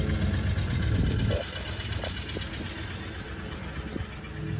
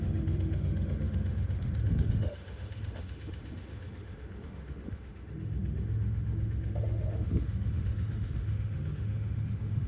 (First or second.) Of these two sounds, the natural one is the first